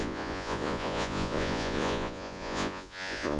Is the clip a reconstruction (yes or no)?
yes